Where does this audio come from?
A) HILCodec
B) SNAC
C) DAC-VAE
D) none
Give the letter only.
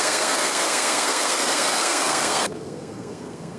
B